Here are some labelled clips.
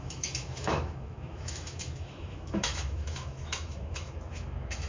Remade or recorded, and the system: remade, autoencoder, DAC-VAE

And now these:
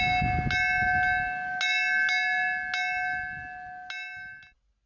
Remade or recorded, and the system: recorded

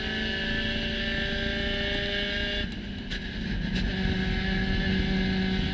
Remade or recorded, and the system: recorded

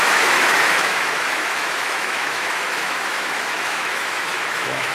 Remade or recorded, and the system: remade, autoencoder, DAC-VAE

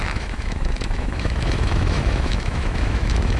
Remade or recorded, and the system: remade, autoencoder, DAC-VAE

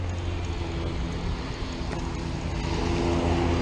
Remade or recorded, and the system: recorded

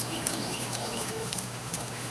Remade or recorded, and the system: remade, autoencoder, DAC-VAE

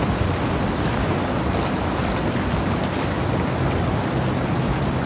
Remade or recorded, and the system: recorded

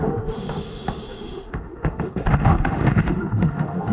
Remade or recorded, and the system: remade, autoencoder, DAC-VAE